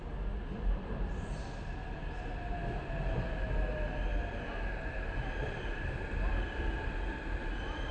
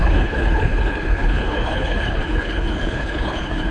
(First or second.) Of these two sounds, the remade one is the second